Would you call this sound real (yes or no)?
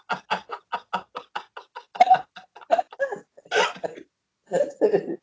yes